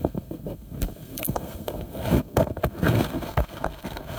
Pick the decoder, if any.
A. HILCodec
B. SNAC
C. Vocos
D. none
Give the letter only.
B